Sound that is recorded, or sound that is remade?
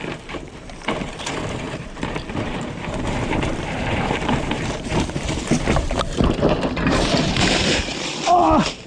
remade